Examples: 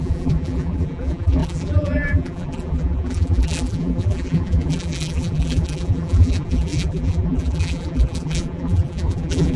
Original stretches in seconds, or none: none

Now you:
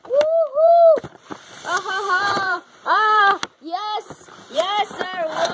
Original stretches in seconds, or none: 0.0-0.5; 3.2-4.4

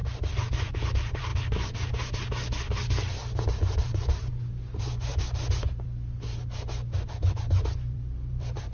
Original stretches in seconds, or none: 0.0-0.7; 1.3-3.4; 5.1-6.1

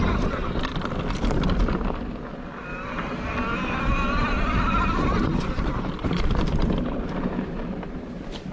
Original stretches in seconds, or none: 0.7-3.8

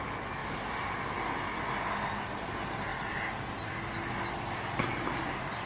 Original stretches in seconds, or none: 0.0-0.4; 1.9-5.7

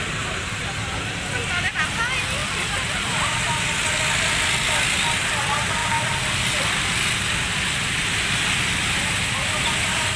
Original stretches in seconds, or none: 0.0-2.4; 3.1-5.8; 6.8-10.2

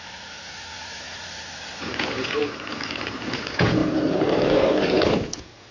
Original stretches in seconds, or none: 0.0-3.8; 4.9-5.7

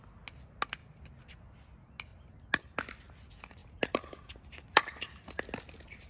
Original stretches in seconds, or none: 0.0-3.6; 5.4-6.1